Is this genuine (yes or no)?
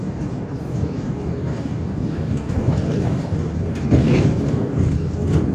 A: no